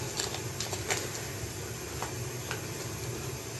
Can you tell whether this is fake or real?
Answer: real